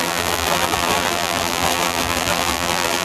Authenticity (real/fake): fake